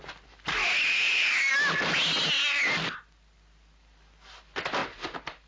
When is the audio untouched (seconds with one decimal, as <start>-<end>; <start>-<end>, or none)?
0.0-0.9; 1.5-5.5